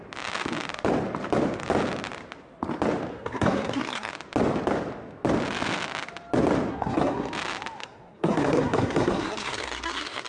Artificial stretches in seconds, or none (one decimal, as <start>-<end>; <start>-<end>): 3.1-4.1; 6.7-7.3; 7.8-10.3